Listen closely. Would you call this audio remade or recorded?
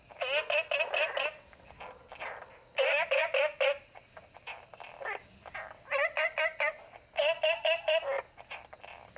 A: recorded